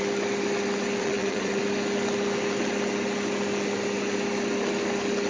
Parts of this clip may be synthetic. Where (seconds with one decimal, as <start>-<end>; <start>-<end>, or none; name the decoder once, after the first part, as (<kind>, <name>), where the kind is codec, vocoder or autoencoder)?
1.0-1.6 (vocoder, Vocos)